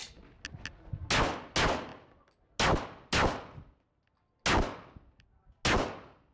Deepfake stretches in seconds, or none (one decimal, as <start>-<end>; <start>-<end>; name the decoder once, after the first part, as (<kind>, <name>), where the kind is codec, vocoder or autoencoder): none

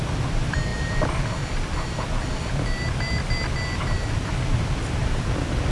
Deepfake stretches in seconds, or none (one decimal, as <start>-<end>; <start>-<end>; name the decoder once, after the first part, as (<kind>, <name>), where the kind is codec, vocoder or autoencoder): none